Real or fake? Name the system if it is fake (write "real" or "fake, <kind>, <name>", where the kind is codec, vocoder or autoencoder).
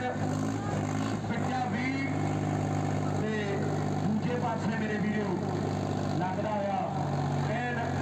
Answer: real